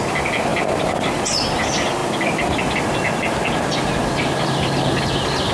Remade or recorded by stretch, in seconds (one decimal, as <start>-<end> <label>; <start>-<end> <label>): 0.0-5.5 recorded